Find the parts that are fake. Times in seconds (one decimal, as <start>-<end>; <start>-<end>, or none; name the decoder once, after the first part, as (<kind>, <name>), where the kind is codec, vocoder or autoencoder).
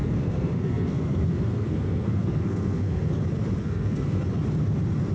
0.0-3.1 (codec, SNAC); 3.6-4.2